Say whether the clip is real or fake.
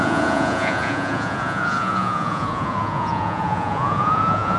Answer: fake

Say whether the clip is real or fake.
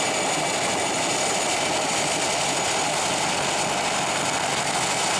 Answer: real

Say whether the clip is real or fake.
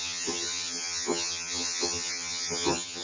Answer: fake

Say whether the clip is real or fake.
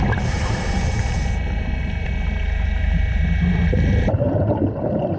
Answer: fake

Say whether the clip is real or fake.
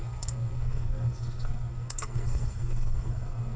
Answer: fake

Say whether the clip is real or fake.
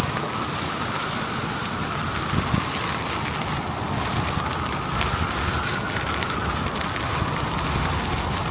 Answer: real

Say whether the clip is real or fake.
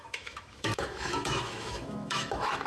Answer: fake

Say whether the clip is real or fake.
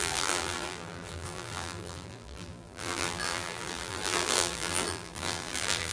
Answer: fake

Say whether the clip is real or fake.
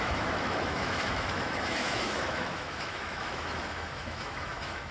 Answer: fake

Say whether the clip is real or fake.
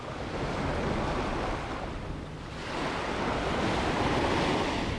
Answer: real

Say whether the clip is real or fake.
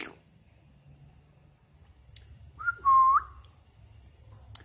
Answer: real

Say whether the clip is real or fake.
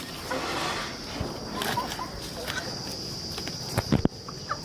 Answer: real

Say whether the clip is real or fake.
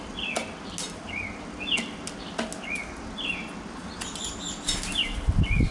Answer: real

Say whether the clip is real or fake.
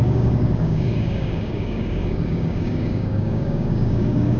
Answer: fake